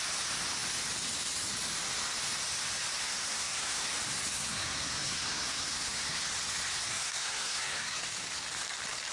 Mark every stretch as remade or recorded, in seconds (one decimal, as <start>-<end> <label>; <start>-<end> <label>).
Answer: 0.0-3.0 recorded; 3.0-3.9 remade; 3.9-4.3 recorded; 4.3-6.2 remade; 6.2-6.7 recorded; 6.7-8.0 remade; 8.0-9.1 recorded